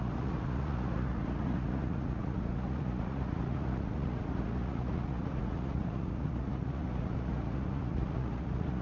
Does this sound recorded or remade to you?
remade